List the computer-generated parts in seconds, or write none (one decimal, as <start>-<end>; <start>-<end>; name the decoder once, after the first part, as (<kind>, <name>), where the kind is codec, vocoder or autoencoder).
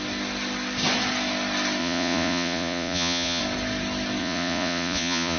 1.8-3.4 (vocoder, Vocos); 4.2-5.4